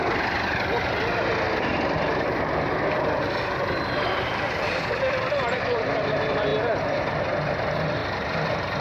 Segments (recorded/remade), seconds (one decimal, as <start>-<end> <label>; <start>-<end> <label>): 0.0-1.7 recorded; 1.7-5.8 remade; 5.8-8.0 recorded; 8.0-8.8 remade